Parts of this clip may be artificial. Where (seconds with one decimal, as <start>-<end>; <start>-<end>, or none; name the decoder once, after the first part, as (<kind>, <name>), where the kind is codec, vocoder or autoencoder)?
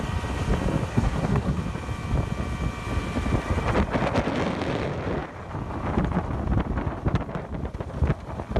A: 0.9-1.6 (codec, SNAC)